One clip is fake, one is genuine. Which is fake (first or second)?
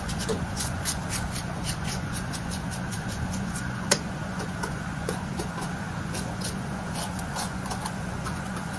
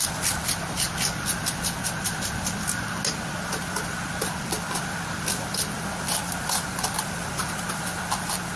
first